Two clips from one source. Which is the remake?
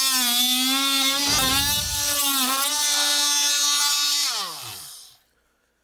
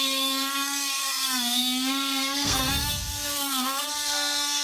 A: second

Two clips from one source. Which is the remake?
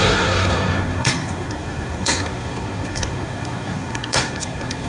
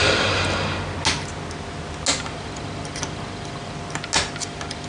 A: first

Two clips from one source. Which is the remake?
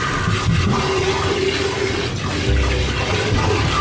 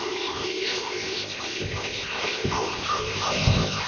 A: second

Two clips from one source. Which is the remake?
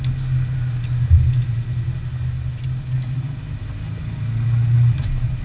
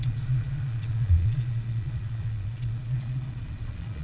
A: second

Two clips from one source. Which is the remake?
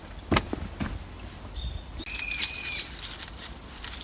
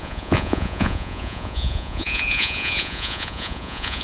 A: second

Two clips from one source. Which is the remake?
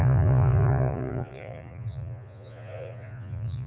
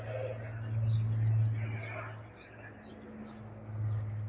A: first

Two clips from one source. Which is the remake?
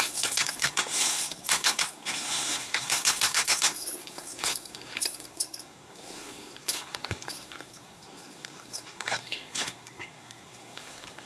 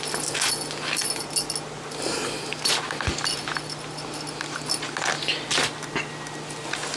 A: first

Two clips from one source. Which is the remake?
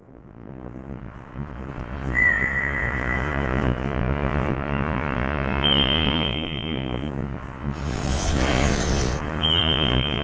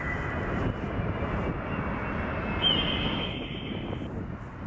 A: first